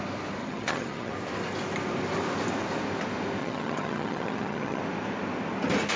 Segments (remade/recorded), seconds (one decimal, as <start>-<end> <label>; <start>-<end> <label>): 0.0-0.4 recorded; 0.4-1.1 remade; 1.1-3.4 recorded; 3.4-4.8 remade; 4.8-6.0 recorded